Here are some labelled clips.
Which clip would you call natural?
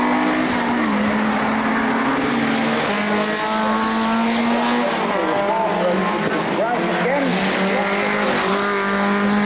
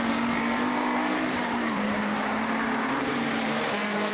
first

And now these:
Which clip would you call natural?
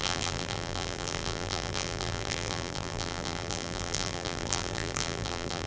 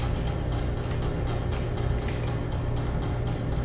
second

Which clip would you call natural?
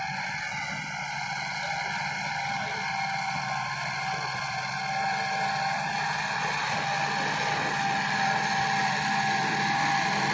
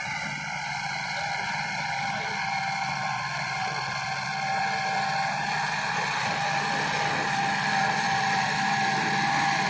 first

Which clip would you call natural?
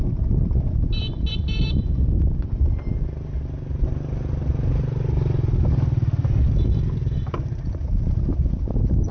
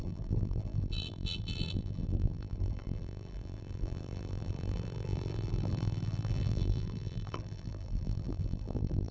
first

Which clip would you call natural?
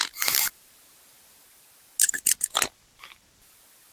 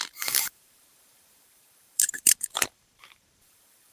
first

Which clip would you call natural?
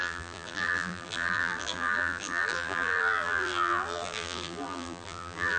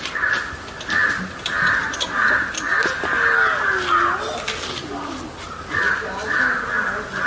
second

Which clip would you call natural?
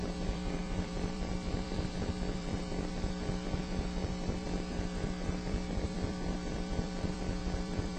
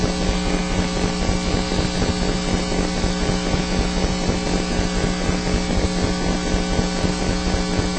second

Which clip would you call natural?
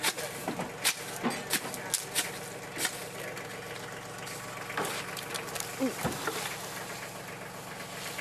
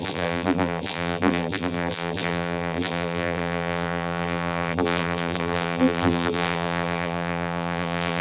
first